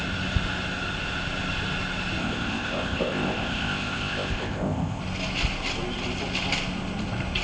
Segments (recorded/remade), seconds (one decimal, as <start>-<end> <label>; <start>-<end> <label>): 0.0-2.2 recorded; 2.2-5.0 remade; 5.0-7.4 recorded